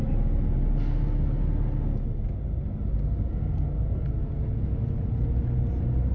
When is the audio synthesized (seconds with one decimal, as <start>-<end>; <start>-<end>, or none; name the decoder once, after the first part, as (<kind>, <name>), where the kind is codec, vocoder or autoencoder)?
3.3-4.1 (codec, SNAC)